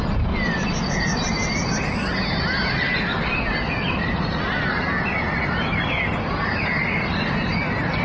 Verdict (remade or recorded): recorded